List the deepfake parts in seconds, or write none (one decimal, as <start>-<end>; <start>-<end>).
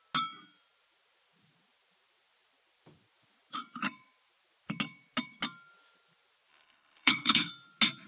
6.5-7.5